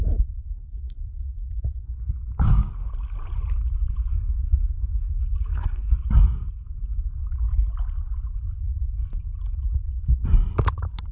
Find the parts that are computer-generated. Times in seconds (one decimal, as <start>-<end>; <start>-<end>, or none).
4.1-5.1; 5.5-6.0